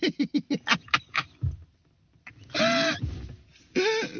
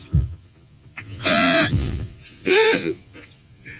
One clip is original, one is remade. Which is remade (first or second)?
second